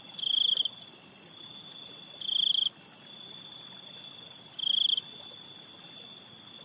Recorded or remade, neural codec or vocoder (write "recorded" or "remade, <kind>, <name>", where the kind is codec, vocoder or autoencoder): recorded